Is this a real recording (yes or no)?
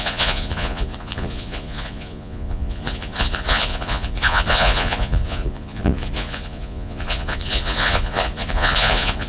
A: no